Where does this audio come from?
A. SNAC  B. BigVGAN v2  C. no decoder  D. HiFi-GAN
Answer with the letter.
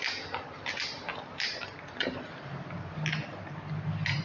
C